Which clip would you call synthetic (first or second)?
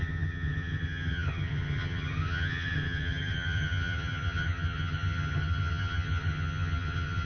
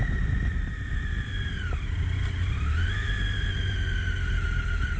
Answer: first